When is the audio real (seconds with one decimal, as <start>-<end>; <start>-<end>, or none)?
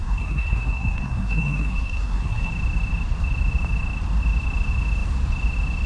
2.5-5.9